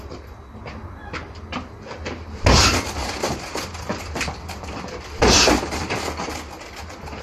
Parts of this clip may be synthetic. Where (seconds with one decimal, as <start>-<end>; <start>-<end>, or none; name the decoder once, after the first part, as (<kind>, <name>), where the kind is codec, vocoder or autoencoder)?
3.0-6.0 (vocoder, BigVGAN v2)